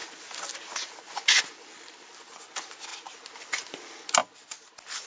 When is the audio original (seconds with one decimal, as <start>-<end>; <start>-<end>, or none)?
0.0-5.1